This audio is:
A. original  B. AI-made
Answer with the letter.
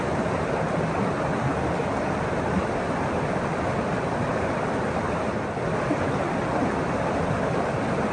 A